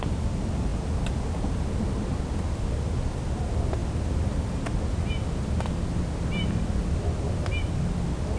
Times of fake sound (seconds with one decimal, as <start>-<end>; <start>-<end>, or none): none